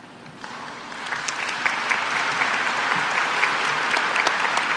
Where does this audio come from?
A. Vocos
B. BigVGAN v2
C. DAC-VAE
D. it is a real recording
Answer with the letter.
D